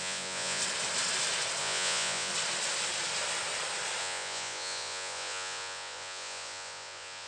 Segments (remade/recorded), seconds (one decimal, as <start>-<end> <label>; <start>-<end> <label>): 0.0-0.6 remade; 0.6-1.6 recorded; 1.6-2.3 remade; 2.3-4.0 recorded; 4.0-7.3 remade